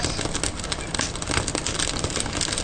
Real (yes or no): yes